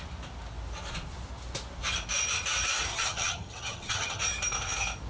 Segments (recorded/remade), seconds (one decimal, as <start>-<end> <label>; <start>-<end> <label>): 0.0-2.9 recorded; 2.9-4.2 remade; 4.2-5.1 recorded